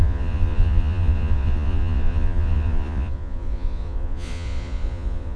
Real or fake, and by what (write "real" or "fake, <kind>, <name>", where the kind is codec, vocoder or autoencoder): fake, vocoder, Vocos